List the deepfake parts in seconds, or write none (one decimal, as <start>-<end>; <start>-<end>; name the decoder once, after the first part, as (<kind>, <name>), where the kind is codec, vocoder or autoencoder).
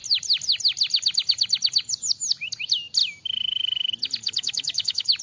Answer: 4.2-5.2 (autoencoder, DAC-VAE)